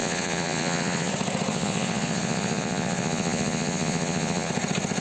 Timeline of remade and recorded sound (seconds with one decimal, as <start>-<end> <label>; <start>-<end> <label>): 0.0-1.1 remade; 1.1-1.5 recorded; 1.5-4.5 remade; 4.5-5.0 recorded